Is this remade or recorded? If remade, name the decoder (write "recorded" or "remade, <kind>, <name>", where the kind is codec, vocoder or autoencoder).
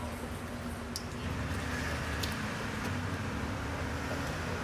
recorded